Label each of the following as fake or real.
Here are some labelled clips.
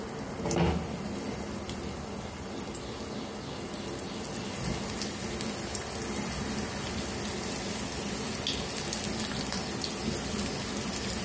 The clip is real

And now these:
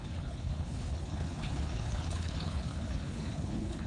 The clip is fake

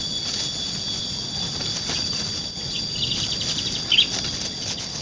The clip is real